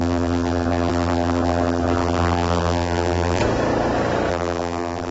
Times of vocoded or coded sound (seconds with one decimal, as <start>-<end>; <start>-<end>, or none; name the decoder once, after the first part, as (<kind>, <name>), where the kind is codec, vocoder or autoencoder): 0.0-3.4 (vocoder, BigVGAN v2); 4.3-5.1